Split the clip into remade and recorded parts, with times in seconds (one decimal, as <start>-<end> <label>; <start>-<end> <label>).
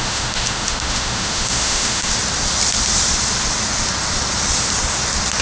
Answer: 0.0-2.1 remade; 2.1-5.4 recorded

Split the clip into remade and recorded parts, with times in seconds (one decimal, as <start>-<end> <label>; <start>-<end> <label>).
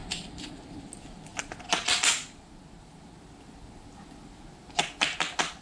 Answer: 0.0-5.6 recorded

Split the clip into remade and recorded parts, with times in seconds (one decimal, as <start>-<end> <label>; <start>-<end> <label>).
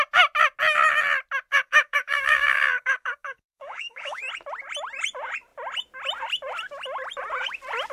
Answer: 0.0-1.5 recorded; 1.5-4.2 remade; 4.2-7.9 recorded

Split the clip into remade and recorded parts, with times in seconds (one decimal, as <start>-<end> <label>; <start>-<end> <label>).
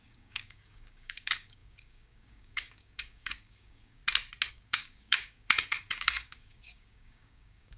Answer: 0.0-4.0 remade; 4.0-4.5 recorded; 4.5-7.8 remade